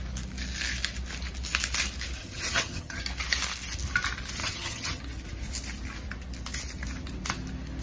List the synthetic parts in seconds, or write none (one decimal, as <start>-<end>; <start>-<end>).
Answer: 2.2-3.0; 4.4-5.0